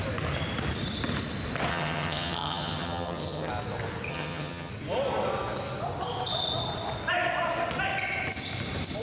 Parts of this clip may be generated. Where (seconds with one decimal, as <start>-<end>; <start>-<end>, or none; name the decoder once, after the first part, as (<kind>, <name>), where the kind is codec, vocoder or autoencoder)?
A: 1.7-3.5 (vocoder, HiFi-GAN); 4.1-4.7